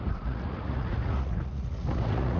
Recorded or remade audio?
remade